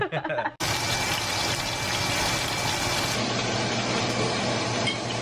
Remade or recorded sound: recorded